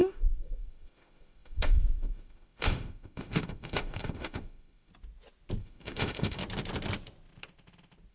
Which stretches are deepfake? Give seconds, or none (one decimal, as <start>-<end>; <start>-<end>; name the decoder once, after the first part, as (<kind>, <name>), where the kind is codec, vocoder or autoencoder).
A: 0.0-4.9 (autoencoder, DAC-VAE); 5.6-6.4